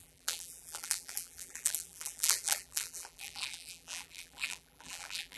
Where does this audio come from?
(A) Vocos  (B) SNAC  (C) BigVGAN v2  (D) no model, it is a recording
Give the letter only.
C